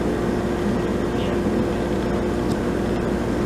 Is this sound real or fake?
real